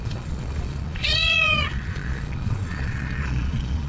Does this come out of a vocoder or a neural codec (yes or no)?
yes